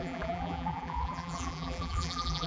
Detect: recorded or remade remade